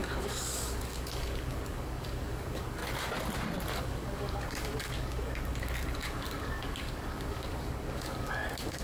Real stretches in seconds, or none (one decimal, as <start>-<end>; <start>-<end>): 2.8-3.8